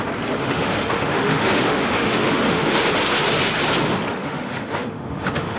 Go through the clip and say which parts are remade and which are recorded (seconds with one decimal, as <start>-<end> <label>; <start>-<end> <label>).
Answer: 0.0-0.4 recorded; 0.4-2.8 remade; 2.8-4.2 recorded; 4.2-5.6 remade